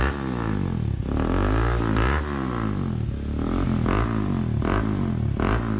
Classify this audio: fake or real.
real